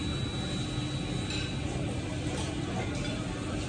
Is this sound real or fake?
real